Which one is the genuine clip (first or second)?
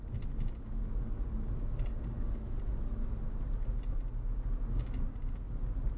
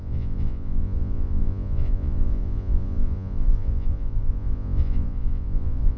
first